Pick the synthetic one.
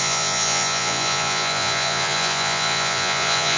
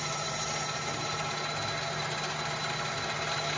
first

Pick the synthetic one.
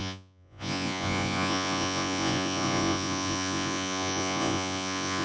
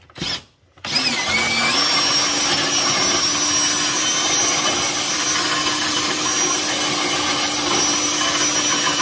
first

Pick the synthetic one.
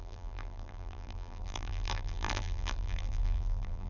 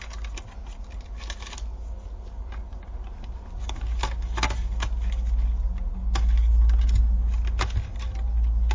first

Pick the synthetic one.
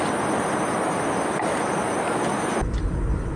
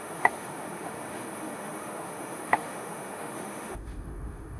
second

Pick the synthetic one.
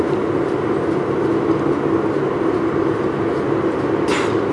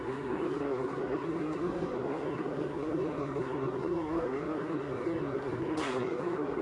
second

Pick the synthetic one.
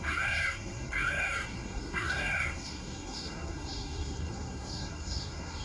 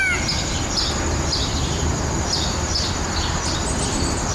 first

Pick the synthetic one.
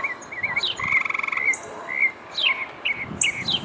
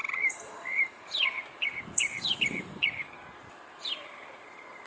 second